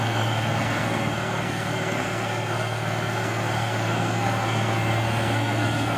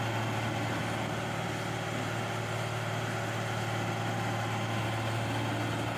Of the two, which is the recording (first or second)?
second